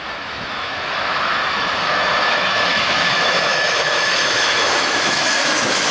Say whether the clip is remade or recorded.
remade